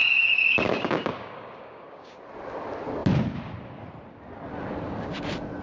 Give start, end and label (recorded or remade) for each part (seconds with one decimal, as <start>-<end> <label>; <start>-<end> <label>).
0.0-2.2 remade; 2.2-5.6 recorded